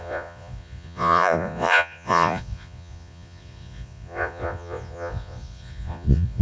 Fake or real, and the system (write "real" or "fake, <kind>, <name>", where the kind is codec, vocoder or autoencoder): fake, vocoder, Vocos